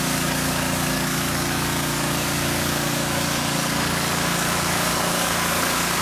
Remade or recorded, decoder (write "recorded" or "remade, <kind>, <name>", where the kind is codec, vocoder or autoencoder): remade, codec, DAC